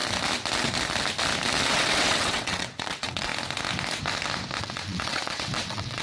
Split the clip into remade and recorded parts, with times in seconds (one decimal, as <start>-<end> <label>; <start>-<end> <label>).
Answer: 0.0-1.7 recorded; 1.7-3.3 remade; 3.3-4.6 recorded; 4.6-6.0 remade